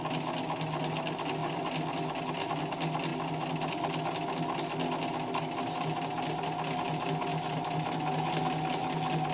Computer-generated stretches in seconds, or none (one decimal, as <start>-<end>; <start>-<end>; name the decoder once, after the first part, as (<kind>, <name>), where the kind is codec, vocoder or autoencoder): none